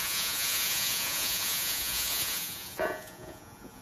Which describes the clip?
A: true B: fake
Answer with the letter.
B